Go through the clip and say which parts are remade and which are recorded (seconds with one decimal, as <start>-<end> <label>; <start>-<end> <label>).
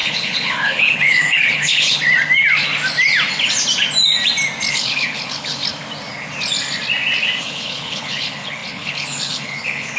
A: 0.0-2.0 remade; 2.0-4.7 recorded; 4.7-5.6 remade; 5.6-7.4 recorded; 7.4-10.0 remade